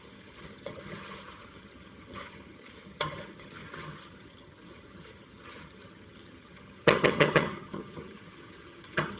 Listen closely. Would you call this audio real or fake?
fake